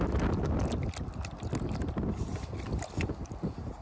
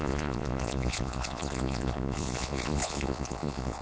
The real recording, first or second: first